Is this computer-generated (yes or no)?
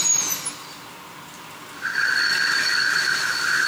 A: no